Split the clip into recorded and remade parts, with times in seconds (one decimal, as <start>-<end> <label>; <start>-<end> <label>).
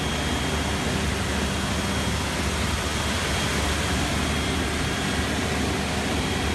0.0-6.5 recorded